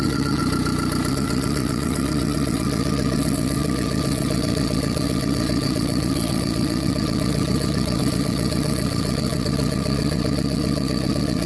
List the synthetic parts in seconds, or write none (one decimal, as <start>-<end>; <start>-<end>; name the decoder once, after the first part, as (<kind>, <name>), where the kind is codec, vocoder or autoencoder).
0.0-0.4 (vocoder, WaveNeXt); 1.1-11.5

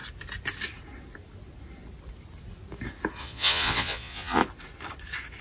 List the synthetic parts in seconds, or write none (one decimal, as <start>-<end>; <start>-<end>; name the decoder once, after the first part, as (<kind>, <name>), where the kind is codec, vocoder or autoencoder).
3.2-4.4 (vocoder, Vocos)

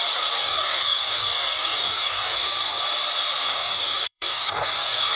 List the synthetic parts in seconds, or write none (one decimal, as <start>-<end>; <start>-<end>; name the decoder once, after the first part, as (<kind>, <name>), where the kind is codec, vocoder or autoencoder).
0.4-2.8 (codec, DAC); 3.5-5.2

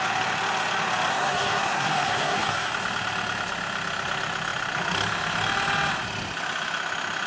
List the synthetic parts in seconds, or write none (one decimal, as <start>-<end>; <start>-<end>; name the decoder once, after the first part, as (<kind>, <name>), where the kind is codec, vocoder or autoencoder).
1.1-2.7 (codec, SNAC)

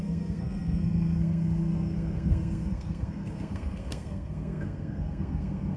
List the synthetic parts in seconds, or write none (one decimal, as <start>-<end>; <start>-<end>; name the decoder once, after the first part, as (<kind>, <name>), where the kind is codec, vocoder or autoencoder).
0.0-5.8 (codec, SNAC)

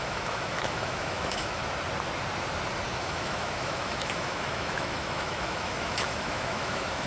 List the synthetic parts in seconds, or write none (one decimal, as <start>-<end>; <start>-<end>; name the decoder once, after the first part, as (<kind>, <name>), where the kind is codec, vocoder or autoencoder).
0.0-1.6 (autoencoder, DAC-VAE); 3.0-7.1

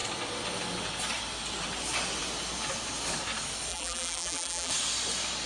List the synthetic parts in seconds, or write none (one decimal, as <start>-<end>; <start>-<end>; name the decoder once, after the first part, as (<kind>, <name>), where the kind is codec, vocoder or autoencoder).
3.7-4.7 (vocoder, BigVGAN v2)